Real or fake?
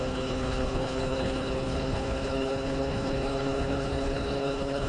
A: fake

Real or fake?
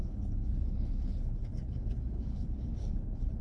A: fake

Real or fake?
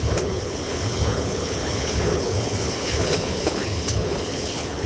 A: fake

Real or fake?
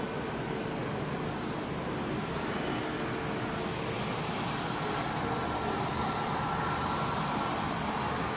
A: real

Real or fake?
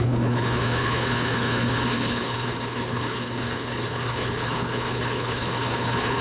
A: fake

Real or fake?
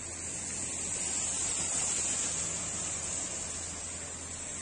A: real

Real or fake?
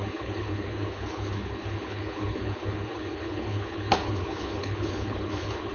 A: fake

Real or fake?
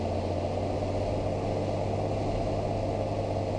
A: real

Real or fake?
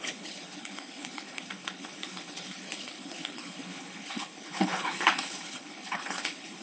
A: fake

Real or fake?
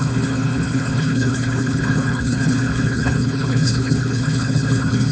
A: fake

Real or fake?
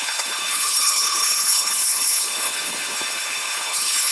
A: fake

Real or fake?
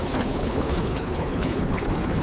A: fake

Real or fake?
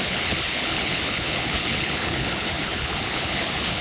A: fake